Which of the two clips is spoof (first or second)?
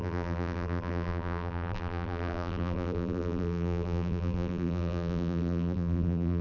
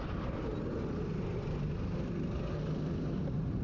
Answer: first